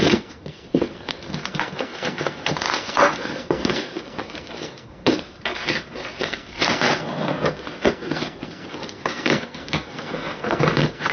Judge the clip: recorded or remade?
remade